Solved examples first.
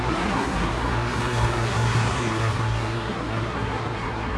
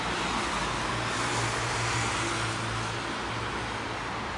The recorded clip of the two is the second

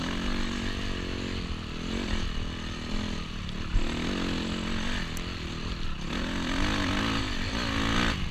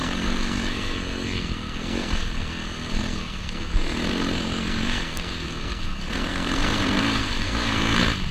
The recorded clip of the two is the first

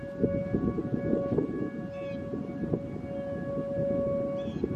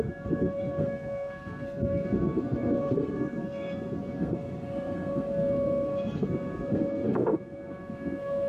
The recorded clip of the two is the first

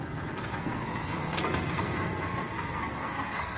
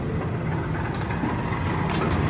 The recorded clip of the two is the second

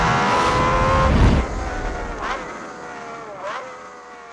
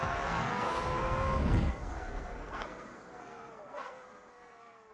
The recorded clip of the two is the first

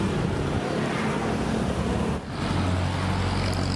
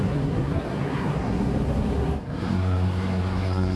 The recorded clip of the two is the first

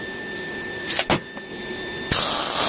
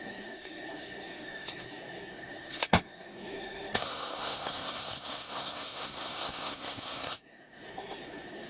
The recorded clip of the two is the first